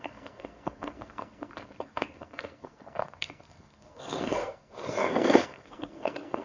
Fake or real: fake